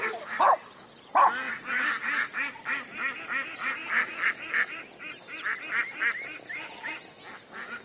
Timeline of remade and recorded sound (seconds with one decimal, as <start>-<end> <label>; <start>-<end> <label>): 0.0-7.8 recorded